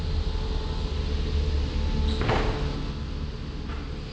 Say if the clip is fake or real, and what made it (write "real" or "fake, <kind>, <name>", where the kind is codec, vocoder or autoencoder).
real